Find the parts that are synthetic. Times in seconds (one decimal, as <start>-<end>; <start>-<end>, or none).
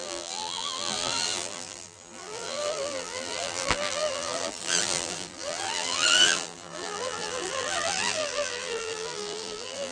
0.0-9.9